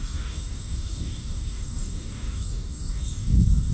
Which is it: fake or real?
fake